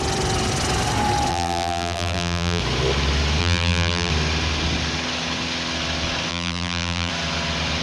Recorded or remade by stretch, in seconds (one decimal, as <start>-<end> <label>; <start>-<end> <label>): 0.0-1.3 recorded; 1.3-2.6 remade; 2.6-3.4 recorded; 3.4-4.1 remade; 4.1-6.3 recorded; 6.3-7.1 remade; 7.1-7.8 recorded